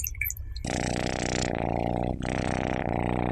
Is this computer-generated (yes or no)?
no